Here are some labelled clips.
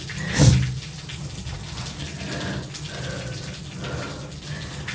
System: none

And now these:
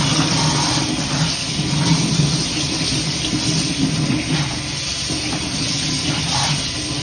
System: none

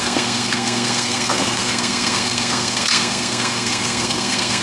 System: codec, SNAC